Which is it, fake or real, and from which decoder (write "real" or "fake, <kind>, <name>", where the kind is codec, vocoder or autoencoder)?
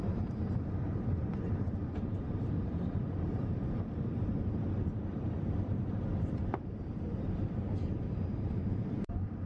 fake, vocoder, BigVGAN v2